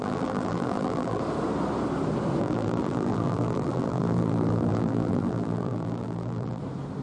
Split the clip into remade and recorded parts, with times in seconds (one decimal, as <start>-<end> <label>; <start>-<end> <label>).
0.0-1.2 remade; 1.2-2.4 recorded; 2.4-6.6 remade; 6.6-7.0 recorded

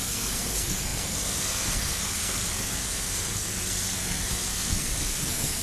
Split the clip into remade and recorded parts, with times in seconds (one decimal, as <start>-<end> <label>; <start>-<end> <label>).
0.0-5.6 remade

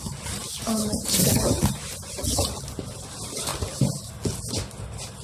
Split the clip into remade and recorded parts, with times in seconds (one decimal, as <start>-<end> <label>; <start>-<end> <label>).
0.0-5.2 recorded

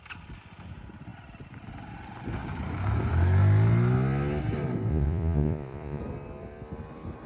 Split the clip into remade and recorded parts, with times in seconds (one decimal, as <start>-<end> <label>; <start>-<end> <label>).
0.0-4.9 recorded; 4.9-6.0 remade; 6.0-7.3 recorded

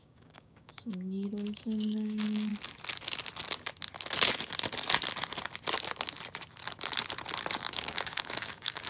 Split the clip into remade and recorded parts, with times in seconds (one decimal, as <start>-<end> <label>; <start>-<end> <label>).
0.0-2.5 remade; 2.5-7.7 recorded; 7.7-8.9 remade

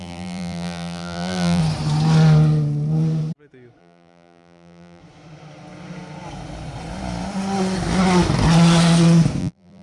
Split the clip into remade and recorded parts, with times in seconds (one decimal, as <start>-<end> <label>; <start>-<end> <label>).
0.0-1.6 remade; 1.6-3.8 recorded; 3.8-5.0 remade; 5.0-9.4 recorded; 9.4-9.8 remade

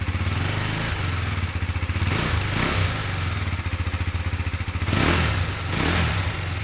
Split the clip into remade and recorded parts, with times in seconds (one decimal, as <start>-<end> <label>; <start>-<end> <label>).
0.0-6.6 recorded